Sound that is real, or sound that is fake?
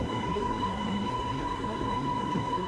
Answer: fake